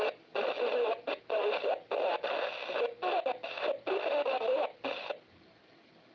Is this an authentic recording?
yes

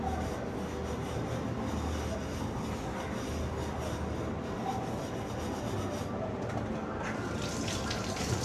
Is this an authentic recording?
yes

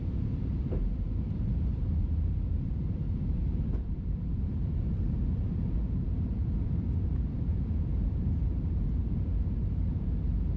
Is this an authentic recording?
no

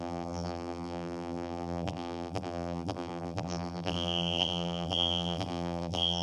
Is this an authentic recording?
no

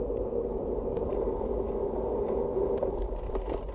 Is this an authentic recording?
yes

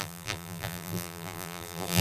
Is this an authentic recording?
no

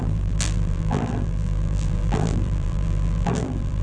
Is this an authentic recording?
no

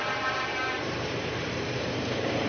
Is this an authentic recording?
no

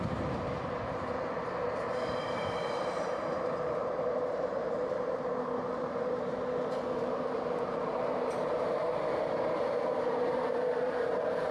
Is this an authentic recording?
no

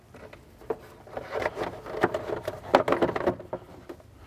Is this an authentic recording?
yes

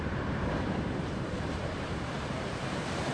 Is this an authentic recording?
no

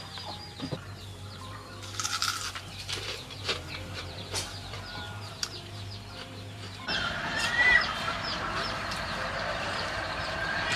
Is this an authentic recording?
no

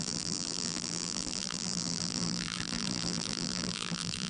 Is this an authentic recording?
no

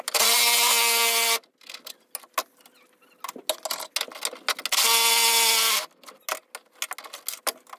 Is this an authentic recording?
yes